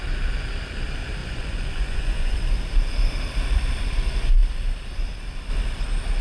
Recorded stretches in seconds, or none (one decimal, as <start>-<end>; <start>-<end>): 0.0-1.2; 2.4-6.2